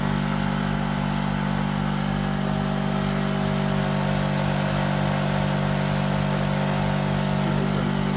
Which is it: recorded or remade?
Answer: recorded